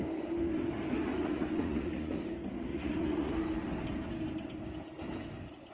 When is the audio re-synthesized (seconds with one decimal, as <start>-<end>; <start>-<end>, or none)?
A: 1.1-2.2; 2.7-3.3